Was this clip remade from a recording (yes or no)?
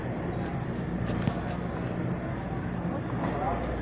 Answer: no